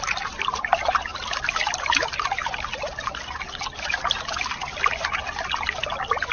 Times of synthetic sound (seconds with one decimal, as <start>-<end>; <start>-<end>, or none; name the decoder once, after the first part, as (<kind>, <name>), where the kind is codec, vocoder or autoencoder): none

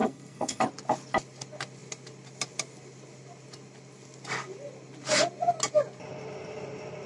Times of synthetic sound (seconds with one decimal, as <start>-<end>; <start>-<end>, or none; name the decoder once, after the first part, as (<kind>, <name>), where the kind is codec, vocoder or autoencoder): 0.0-0.6 (codec, SNAC)